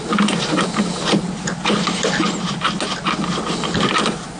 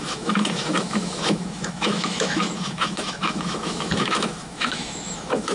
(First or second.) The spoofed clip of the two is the second